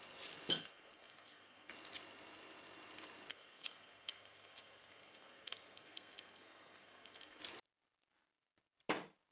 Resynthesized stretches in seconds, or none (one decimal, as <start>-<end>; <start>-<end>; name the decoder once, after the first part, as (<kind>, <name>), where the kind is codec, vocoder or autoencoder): 0.6-1.7 (codec, SNAC); 3.3-7.4